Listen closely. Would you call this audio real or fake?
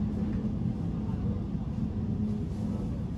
real